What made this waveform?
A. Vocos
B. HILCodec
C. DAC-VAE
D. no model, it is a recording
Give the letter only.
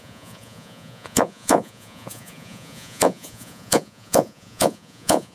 A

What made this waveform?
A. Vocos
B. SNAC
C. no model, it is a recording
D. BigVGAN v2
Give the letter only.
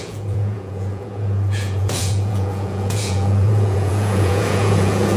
A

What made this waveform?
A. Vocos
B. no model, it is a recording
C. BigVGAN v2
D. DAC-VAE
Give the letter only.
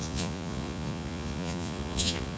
A